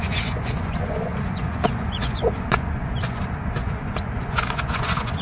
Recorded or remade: remade